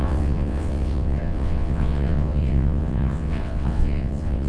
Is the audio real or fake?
fake